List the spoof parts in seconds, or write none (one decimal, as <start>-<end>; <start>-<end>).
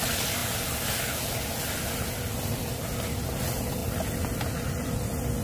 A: none